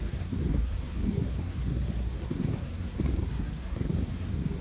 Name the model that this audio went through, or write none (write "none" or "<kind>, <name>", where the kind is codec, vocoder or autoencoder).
codec, SNAC